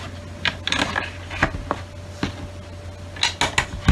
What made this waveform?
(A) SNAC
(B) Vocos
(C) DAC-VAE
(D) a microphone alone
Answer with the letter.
D